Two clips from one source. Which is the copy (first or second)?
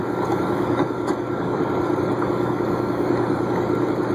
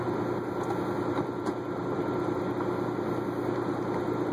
first